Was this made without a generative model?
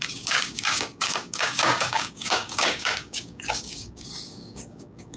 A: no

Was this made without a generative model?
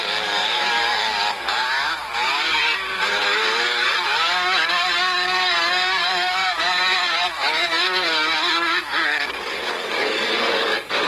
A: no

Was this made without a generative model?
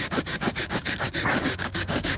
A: no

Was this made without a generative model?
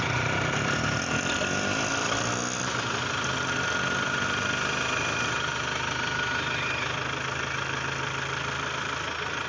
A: yes